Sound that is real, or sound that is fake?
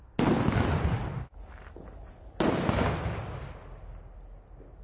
real